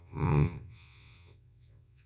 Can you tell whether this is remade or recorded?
remade